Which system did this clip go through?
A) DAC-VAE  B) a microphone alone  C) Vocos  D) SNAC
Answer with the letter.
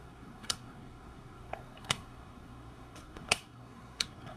D